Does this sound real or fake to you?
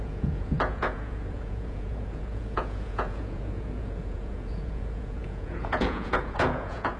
fake